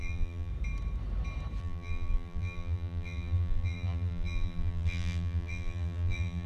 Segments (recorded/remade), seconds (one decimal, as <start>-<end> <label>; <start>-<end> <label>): 0.0-0.5 remade; 0.5-1.6 recorded; 1.6-6.5 remade